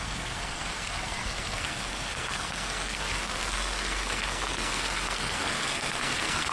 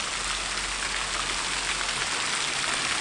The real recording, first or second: second